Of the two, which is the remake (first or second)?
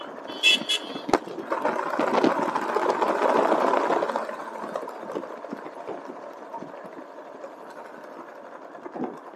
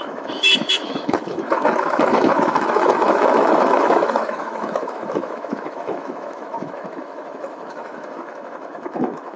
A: second